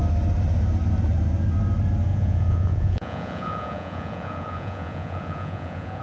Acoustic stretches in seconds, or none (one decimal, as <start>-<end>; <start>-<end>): 0.0-2.1